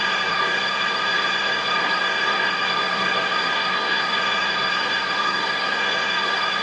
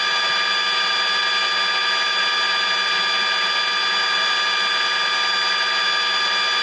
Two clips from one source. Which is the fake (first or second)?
first